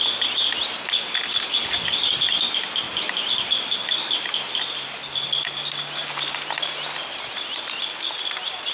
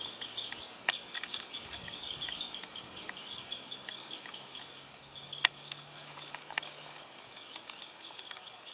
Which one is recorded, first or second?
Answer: first